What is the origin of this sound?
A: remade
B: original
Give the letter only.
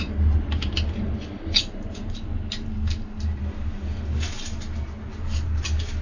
B